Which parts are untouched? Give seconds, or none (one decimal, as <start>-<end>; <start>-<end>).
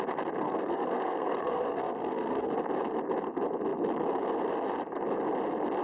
0.0-0.4; 2.5-5.8